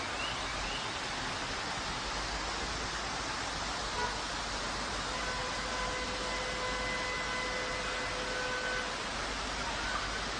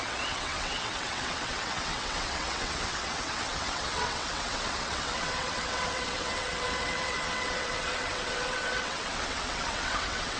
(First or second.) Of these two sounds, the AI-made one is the second